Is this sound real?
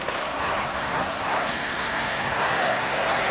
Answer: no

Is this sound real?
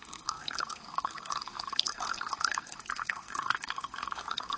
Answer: no